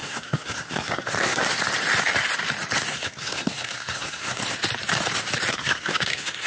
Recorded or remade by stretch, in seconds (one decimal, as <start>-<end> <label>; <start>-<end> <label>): 0.0-1.4 remade; 1.4-2.9 recorded; 2.9-4.4 remade; 4.4-5.5 recorded; 5.5-6.5 remade